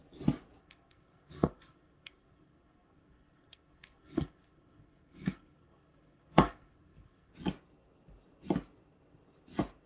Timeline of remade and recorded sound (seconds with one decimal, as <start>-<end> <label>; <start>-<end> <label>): 0.0-0.6 recorded; 0.6-7.3 remade; 7.3-9.9 recorded